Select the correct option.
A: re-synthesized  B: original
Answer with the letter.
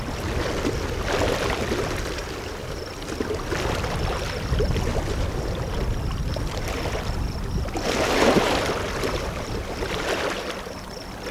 B